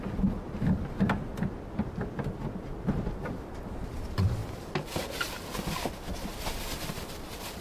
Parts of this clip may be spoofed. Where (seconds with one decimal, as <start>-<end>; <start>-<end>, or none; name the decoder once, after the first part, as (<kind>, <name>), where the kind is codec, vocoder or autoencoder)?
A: none